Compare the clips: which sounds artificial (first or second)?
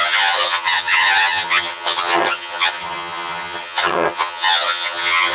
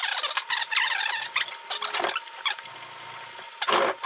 first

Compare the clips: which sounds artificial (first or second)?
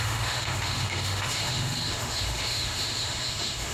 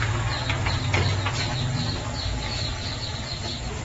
first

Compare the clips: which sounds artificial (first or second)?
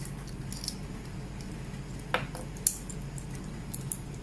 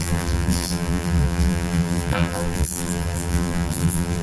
second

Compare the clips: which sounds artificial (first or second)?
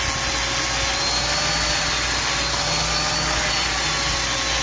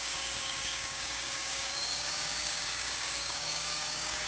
second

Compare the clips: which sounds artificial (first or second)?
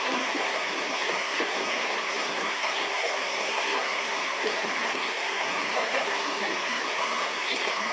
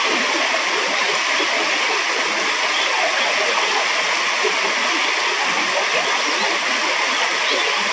first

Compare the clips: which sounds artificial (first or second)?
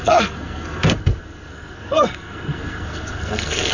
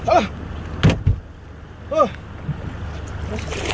first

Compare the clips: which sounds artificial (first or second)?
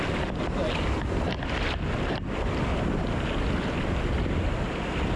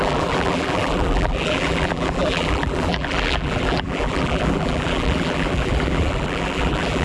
second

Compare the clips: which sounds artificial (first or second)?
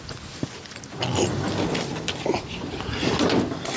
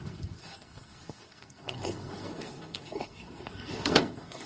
second